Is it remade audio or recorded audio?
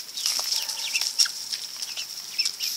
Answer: recorded